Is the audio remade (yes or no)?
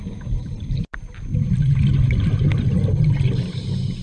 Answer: no